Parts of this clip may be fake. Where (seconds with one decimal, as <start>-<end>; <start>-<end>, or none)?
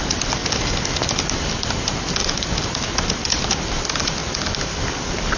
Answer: none